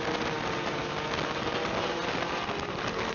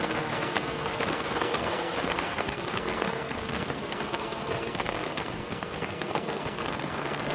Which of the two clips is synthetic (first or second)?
second